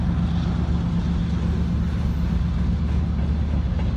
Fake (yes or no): no